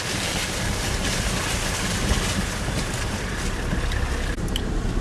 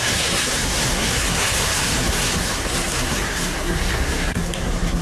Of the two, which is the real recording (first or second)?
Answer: first